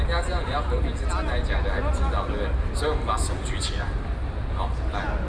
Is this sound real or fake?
real